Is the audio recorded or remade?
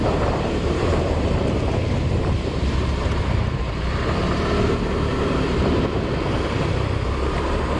remade